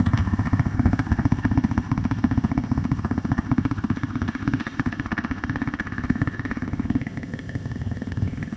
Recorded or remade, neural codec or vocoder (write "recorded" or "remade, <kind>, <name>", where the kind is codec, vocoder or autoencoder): remade, codec, ZipCodec